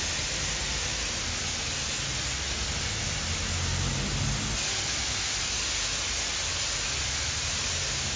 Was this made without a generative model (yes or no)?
yes